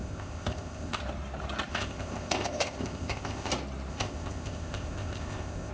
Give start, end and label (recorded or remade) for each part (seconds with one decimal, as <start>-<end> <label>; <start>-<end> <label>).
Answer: 0.0-1.0 remade; 1.0-1.7 recorded; 1.7-3.5 remade; 3.5-3.9 recorded; 3.9-5.7 remade